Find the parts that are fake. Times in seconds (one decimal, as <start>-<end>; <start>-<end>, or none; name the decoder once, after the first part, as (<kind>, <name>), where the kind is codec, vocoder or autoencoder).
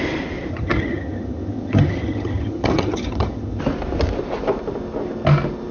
0.5-3.6 (vocoder, HiFi-GAN)